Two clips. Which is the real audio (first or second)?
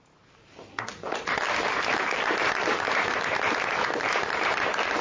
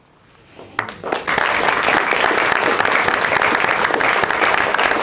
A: second